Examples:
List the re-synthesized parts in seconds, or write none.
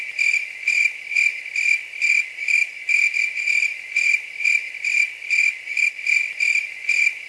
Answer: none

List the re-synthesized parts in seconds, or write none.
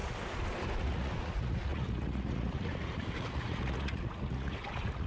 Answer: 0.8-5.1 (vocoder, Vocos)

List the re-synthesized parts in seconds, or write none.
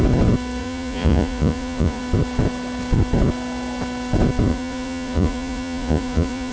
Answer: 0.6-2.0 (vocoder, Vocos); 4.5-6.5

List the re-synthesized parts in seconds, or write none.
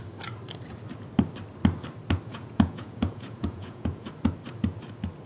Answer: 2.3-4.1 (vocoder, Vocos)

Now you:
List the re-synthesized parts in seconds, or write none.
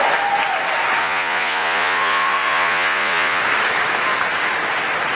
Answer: 1.0-3.4 (vocoder, Vocos)